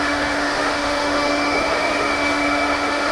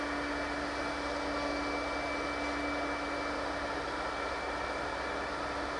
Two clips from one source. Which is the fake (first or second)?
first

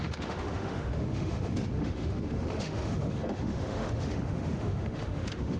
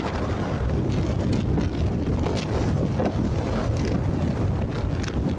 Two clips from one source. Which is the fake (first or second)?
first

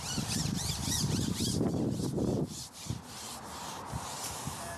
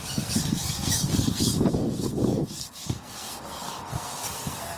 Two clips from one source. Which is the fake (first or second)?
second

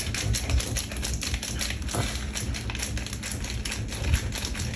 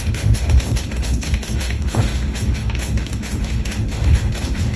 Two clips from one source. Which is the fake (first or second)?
second